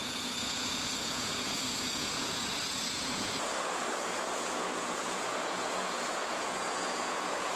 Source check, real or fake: fake